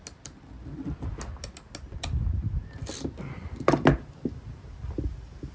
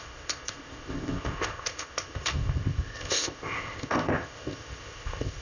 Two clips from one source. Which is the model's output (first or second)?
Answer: second